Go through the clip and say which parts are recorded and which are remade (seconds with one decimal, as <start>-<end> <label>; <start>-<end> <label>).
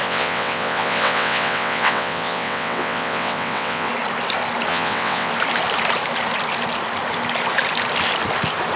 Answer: 0.0-3.9 remade; 3.9-4.7 recorded; 4.7-5.3 remade; 5.3-8.8 recorded